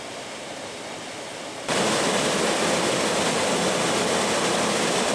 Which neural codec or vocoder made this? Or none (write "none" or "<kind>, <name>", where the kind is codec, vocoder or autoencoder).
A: none